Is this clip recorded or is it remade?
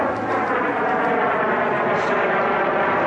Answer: recorded